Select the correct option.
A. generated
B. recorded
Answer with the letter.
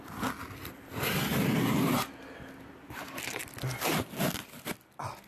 B